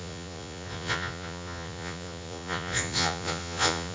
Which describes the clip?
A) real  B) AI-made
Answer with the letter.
B